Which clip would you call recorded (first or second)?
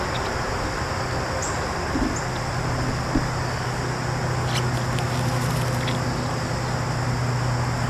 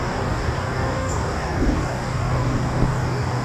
first